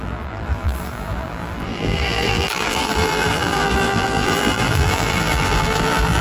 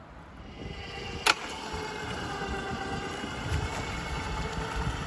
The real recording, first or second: second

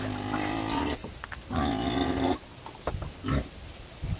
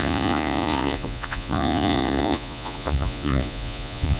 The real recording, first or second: first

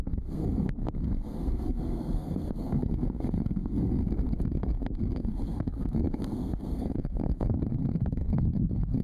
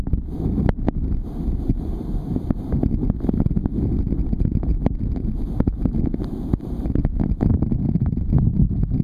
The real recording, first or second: second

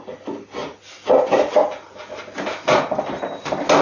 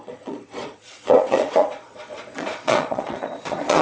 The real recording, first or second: first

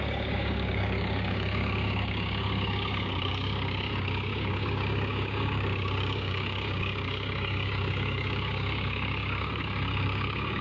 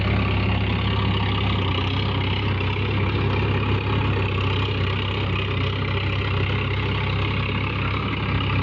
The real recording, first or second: second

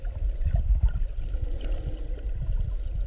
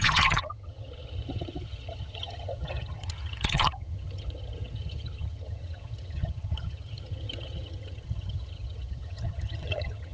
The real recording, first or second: first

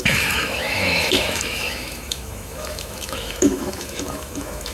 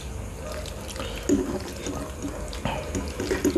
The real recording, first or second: second